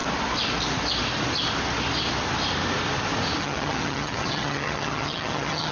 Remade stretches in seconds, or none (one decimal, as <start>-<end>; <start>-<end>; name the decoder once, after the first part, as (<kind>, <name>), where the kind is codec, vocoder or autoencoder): 3.4-5.7 (vocoder, HiFi-GAN)